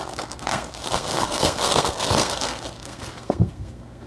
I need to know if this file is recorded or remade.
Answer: remade